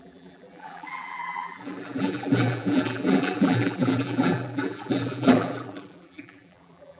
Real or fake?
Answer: fake